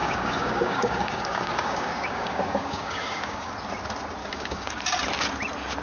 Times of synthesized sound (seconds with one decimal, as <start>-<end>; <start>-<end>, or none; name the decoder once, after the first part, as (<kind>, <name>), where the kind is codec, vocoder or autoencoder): 0.0-3.5 (codec, DAC); 4.2-4.8